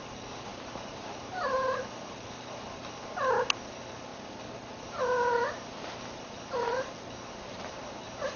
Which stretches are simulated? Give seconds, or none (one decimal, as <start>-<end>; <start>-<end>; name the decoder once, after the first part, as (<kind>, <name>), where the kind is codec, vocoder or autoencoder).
0.5-1.2 (vocoder, BigVGAN v2)